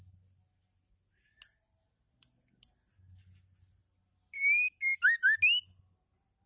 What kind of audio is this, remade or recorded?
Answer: recorded